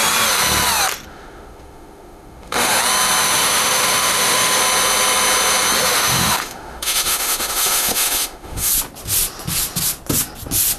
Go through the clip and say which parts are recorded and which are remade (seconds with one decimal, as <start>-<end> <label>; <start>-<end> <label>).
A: 0.0-1.1 recorded; 1.1-2.8 remade; 2.8-3.2 recorded; 3.2-4.6 remade; 4.6-5.9 recorded; 5.9-8.7 remade; 8.7-10.8 recorded